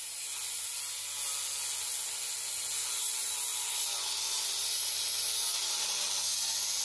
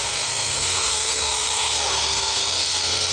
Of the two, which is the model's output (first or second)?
second